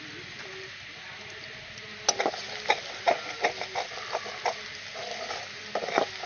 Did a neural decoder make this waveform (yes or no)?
no